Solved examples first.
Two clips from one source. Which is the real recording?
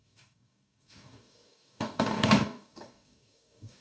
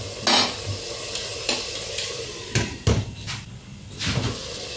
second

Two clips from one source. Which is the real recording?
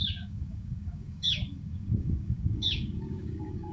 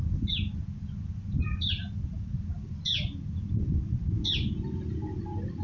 second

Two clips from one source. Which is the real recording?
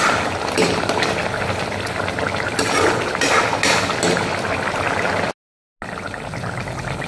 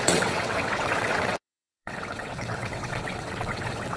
first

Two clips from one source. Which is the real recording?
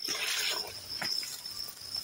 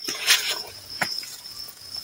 first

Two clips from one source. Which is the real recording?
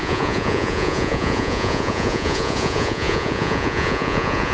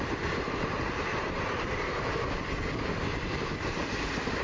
second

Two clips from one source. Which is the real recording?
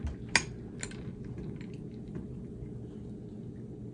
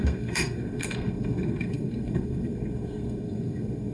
first